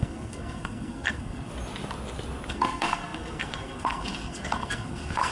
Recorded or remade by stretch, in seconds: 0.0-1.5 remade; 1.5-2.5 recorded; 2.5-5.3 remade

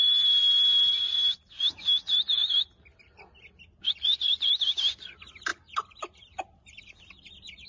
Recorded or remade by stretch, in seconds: 0.0-7.7 recorded

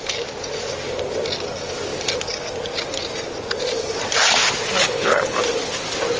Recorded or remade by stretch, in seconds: 0.0-4.8 recorded; 4.8-5.4 remade; 5.4-6.2 recorded

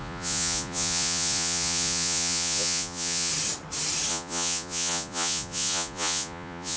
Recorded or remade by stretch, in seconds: 0.0-3.3 remade; 3.3-4.1 recorded; 4.1-6.8 remade

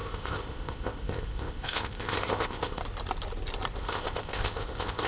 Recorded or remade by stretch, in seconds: 0.0-2.8 remade; 2.8-3.8 recorded; 3.8-5.1 remade